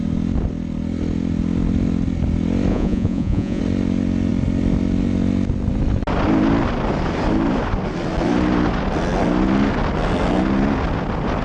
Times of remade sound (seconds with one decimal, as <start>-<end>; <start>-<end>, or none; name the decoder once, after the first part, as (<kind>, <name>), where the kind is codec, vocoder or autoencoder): 2.7-3.6 (vocoder, Vocos)